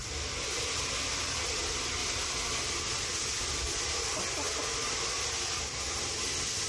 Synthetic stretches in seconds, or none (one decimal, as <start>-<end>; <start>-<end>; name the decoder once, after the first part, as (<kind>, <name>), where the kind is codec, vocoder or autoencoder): none